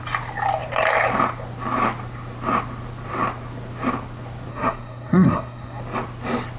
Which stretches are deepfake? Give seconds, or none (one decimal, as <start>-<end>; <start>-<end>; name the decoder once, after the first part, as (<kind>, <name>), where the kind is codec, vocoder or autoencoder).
4.5-5.8 (codec, SNAC)